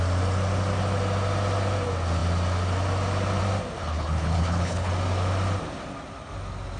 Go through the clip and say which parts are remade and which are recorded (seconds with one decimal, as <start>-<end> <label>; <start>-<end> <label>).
0.0-3.8 recorded; 3.8-4.9 remade; 4.9-6.8 recorded